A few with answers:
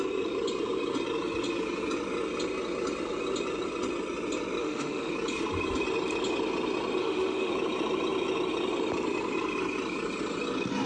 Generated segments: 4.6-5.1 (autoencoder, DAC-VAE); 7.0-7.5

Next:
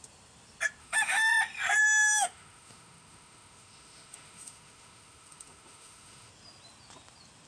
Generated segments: 0.8-1.3 (autoencoder, DAC-VAE); 1.8-6.3

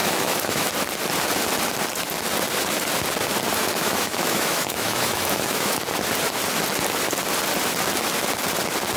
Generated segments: 0.0-0.7 (autoencoder, DAC-VAE); 3.5-5.8

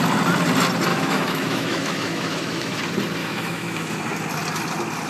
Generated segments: 0.9-2.8 (autoencoder, DAC-VAE); 3.2-4.0

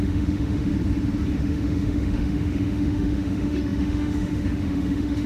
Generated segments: 0.0-0.7 (autoencoder, DAC-VAE); 1.4-5.3